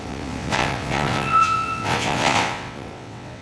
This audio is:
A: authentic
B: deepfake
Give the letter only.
B